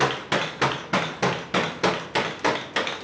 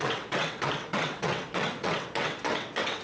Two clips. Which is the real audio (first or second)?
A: first